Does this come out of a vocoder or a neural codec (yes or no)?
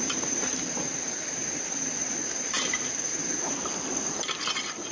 yes